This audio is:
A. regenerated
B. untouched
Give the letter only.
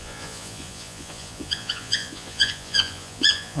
A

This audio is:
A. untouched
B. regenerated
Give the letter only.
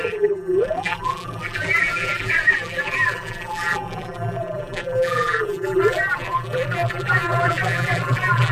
B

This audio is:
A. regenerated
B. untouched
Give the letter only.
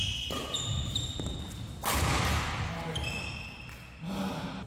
B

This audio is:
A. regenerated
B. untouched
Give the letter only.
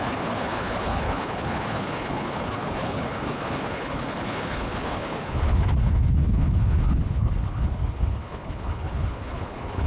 A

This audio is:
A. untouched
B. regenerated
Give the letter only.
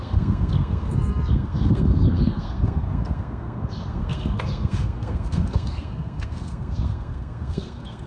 B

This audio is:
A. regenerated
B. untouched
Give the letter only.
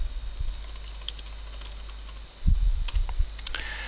B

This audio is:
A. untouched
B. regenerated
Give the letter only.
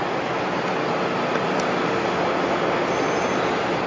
A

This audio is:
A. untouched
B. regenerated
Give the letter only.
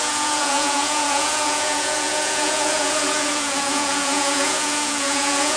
B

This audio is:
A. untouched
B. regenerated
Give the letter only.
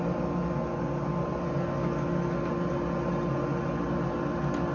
A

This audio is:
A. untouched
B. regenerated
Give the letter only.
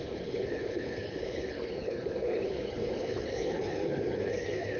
B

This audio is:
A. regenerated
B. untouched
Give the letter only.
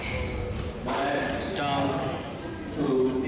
B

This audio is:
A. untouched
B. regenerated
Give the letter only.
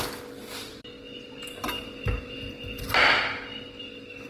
B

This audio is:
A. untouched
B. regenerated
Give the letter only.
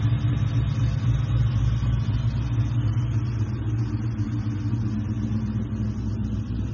A